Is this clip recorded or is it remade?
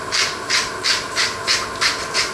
recorded